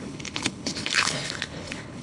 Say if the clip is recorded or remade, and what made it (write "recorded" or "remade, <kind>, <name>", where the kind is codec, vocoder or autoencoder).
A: remade, codec, HILCodec